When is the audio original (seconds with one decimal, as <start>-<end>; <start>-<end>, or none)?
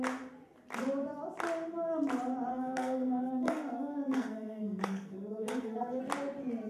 0.0-2.5; 6.0-6.7